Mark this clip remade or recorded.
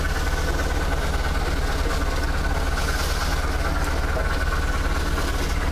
recorded